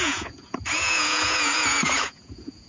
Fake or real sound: fake